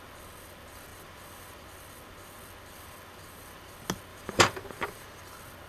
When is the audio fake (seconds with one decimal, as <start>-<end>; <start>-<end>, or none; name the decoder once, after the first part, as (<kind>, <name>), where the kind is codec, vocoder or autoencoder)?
4.1-5.2 (vocoder, BigVGAN v2)